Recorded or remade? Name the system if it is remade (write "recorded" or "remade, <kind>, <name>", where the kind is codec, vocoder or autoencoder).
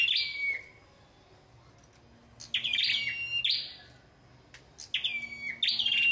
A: recorded